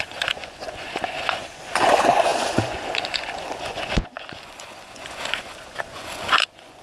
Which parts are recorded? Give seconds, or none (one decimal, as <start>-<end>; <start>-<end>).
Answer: none

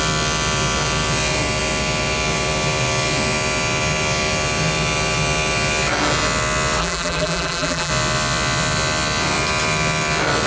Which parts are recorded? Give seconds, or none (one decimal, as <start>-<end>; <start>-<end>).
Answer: 0.0-6.8; 7.9-10.5

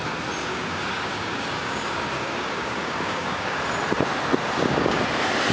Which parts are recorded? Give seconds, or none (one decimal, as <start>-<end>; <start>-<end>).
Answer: 0.0-0.4; 3.6-4.4; 5.0-5.5

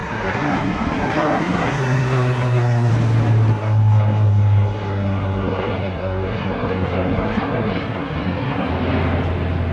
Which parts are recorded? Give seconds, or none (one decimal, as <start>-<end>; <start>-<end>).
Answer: 2.9-3.5; 8.7-9.7

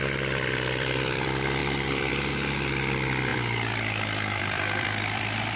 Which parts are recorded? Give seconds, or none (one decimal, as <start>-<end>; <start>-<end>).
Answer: none